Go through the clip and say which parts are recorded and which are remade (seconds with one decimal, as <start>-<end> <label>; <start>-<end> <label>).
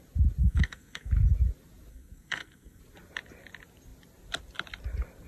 0.0-0.4 recorded; 0.4-1.1 remade; 1.1-1.9 recorded; 1.9-2.8 remade; 2.8-5.3 recorded